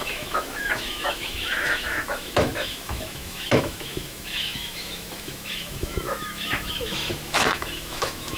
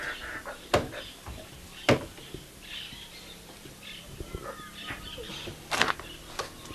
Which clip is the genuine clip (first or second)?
second